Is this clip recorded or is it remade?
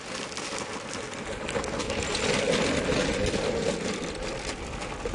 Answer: recorded